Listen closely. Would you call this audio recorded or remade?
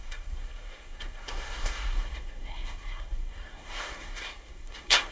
remade